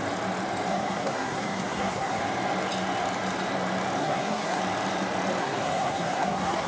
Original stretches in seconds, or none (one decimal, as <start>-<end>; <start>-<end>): 0.0-0.7; 2.2-4.0; 4.6-5.4